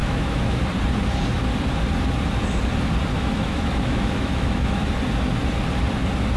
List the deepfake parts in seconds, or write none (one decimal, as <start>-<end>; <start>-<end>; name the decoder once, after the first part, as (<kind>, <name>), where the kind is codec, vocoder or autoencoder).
0.0-0.6 (autoencoder, DAC-VAE); 3.1-4.9